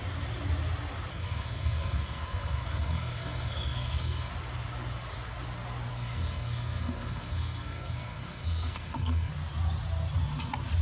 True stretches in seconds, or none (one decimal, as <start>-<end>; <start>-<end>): 0.0-1.1; 4.3-5.9; 9.3-10.8